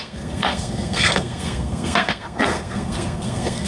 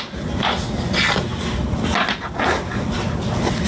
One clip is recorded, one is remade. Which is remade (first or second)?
first